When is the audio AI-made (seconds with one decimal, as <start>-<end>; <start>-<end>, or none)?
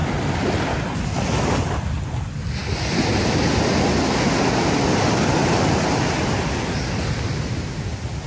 none